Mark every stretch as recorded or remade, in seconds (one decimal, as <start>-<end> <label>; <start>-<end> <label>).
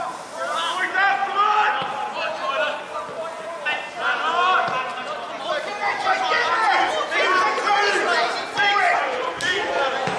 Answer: 0.0-10.2 recorded